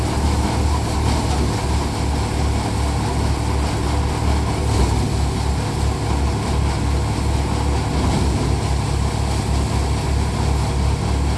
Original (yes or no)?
yes